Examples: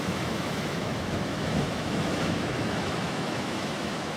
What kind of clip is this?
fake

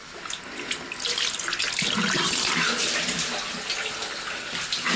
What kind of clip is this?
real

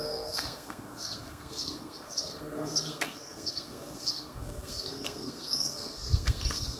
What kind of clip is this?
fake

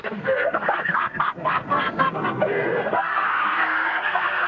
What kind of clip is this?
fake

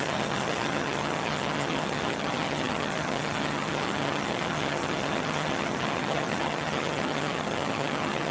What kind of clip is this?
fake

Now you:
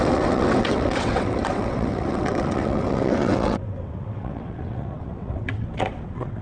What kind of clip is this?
fake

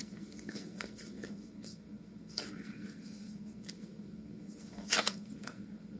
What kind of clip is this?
fake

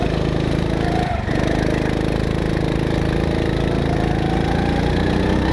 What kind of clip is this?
real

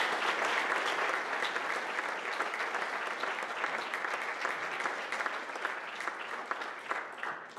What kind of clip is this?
real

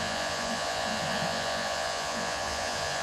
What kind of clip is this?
fake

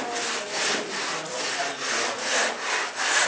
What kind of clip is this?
real